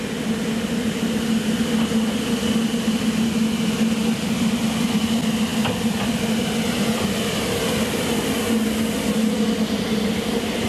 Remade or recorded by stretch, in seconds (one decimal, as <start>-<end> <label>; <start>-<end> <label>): 0.0-5.5 recorded; 5.5-6.1 remade; 6.1-10.7 recorded